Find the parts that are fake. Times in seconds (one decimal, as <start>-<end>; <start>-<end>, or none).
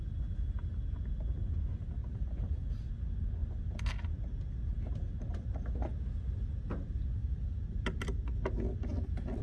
2.0-2.7; 3.4-3.9; 7.2-7.8